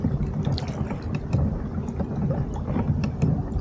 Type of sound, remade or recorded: recorded